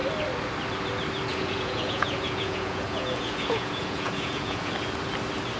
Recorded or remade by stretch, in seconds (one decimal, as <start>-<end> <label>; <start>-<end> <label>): 0.0-1.3 recorded; 1.3-4.7 remade; 4.7-5.6 recorded